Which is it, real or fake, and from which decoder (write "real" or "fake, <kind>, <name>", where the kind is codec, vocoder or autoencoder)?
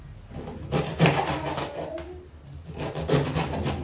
real